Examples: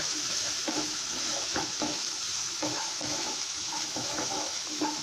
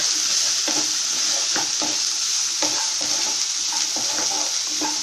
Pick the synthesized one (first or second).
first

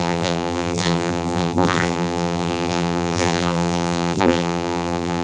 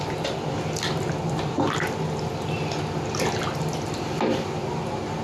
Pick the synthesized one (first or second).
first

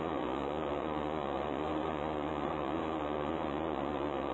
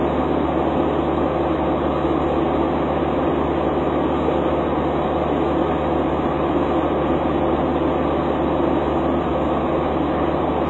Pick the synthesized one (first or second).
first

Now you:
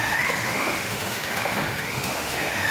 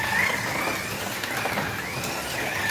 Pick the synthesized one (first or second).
first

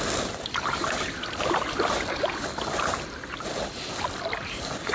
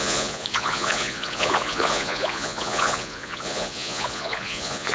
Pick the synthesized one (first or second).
second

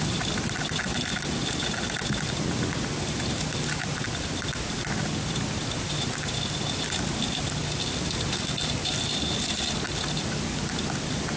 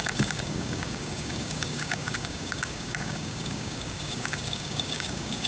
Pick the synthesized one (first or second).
second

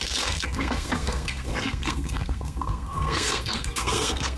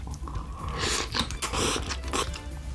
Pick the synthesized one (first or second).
first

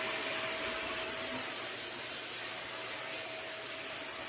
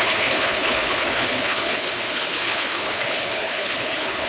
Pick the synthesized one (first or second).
second